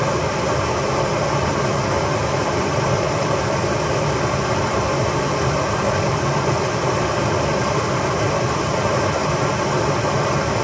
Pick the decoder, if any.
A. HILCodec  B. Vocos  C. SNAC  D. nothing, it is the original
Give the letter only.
D